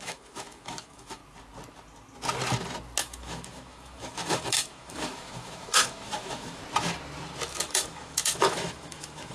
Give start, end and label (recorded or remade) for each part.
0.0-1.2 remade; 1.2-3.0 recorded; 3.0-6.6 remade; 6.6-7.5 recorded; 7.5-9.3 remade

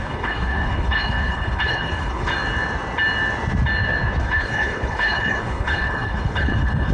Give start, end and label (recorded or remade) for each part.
0.0-2.3 remade; 2.3-4.2 recorded; 4.2-6.9 remade